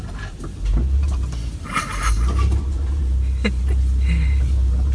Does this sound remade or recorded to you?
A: remade